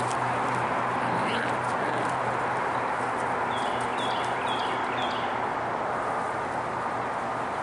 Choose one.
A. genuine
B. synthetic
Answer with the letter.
A